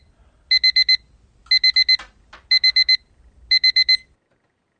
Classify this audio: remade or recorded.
recorded